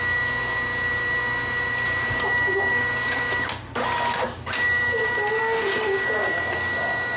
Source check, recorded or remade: recorded